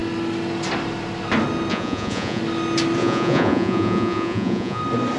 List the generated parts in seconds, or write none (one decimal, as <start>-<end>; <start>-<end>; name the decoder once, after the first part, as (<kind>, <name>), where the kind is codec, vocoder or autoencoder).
1.7-2.4 (vocoder, Vocos); 3.0-4.8